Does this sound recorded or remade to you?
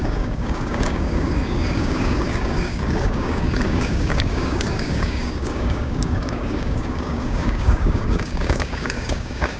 remade